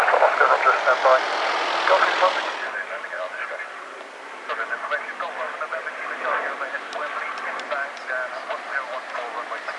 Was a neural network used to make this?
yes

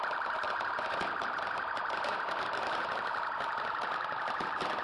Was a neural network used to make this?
yes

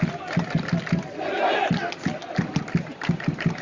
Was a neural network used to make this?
no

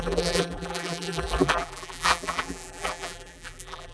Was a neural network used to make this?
yes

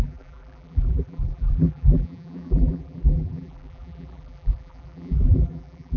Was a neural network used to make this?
yes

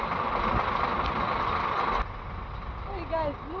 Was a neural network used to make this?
no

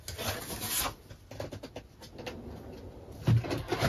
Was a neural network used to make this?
no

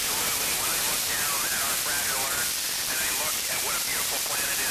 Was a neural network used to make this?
no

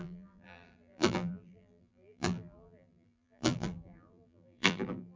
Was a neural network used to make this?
yes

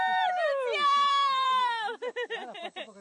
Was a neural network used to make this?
yes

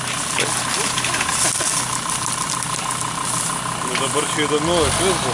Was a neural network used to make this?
no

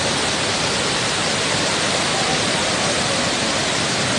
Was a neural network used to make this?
yes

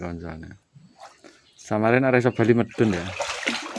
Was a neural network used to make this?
no